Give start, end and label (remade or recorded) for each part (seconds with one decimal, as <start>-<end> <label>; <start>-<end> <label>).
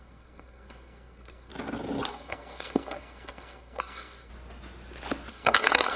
0.0-1.5 remade; 1.5-2.1 recorded; 2.1-4.3 remade; 4.3-5.3 recorded; 5.3-6.0 remade